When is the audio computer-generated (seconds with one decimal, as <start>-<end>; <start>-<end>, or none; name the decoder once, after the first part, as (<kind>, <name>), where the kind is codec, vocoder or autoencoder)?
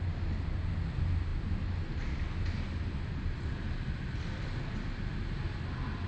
none